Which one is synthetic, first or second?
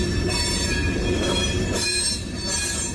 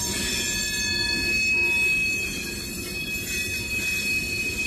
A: first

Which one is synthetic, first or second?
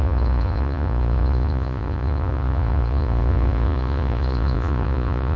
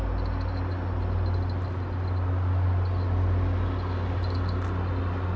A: first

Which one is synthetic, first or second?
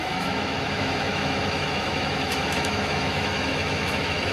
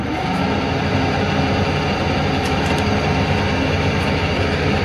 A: first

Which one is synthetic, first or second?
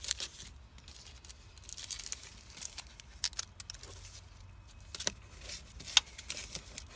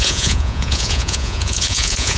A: second